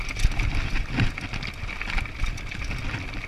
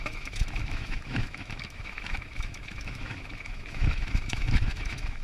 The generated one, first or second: second